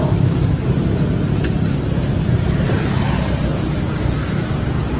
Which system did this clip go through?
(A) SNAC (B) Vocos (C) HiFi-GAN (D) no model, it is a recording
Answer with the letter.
D